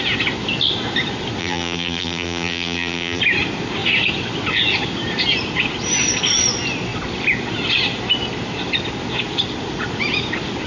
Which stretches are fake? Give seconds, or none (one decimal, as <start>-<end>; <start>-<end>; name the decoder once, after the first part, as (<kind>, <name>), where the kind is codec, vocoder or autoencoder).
1.4-3.2 (vocoder, BigVGAN v2)